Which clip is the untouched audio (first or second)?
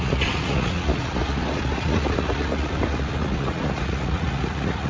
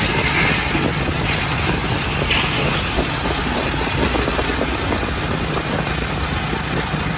second